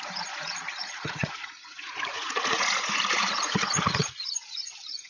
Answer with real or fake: fake